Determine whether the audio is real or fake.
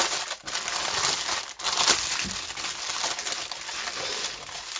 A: real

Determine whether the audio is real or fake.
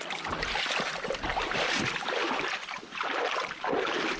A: real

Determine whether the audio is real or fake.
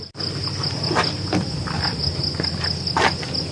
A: real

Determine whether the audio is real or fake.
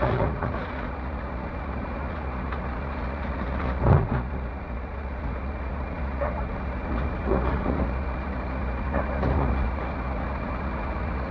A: fake